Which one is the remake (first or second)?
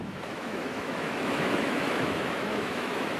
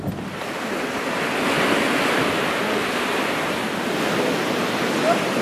first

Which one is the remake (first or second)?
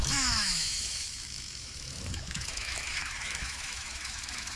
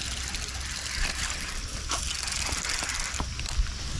first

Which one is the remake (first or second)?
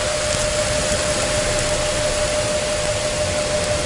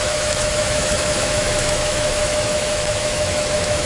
second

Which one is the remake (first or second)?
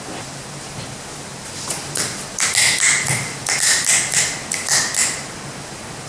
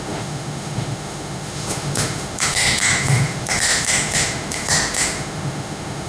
second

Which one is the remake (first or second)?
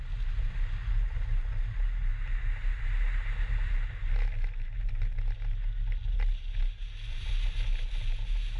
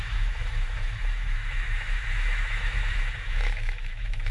second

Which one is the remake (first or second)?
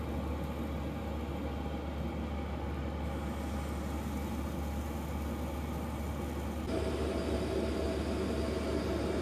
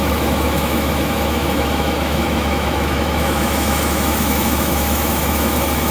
second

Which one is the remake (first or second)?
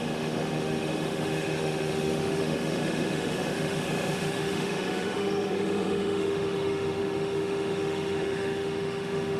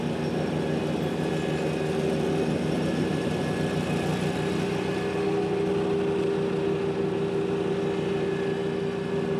first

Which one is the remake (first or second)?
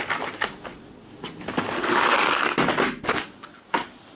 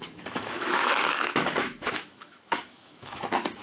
second